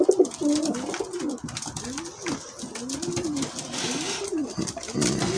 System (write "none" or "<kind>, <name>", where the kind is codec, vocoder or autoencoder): none